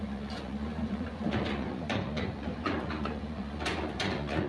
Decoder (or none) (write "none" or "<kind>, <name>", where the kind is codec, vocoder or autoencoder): vocoder, Vocos